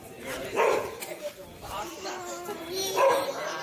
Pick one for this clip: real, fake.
fake